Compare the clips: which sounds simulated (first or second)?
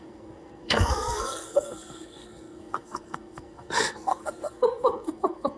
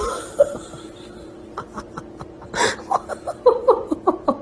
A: first